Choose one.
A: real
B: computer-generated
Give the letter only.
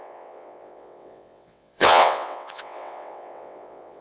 B